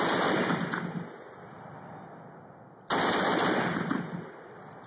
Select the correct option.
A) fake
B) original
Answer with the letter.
B